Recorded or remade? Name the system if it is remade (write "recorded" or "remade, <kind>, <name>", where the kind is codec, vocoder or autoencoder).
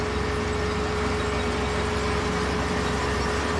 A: recorded